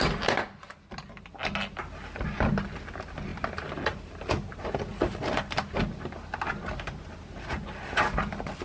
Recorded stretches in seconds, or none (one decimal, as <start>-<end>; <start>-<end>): 0.0-8.6